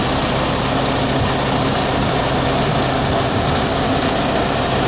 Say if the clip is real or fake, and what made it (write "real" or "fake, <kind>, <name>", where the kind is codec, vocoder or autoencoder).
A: real